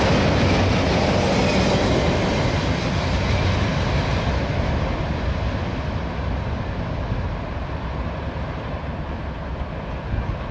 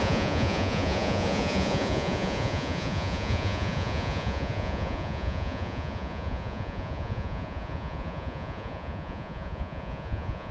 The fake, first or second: second